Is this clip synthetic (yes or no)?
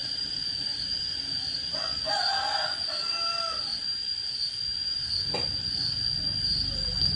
no